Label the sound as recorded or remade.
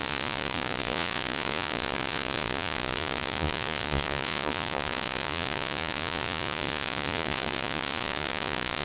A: remade